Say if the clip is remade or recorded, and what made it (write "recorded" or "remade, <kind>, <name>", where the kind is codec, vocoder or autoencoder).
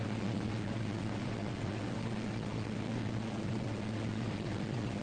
remade, vocoder, WaveNeXt